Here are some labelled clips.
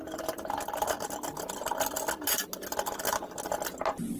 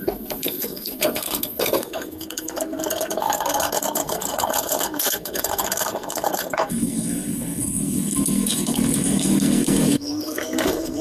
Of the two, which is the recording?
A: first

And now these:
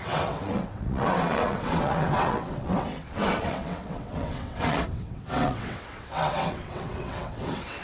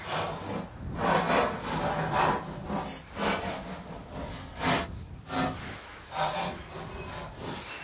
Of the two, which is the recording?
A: second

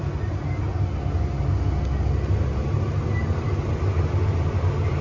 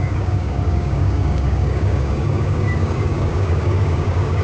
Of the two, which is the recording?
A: first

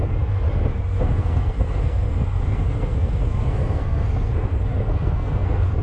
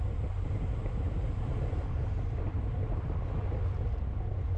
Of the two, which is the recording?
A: second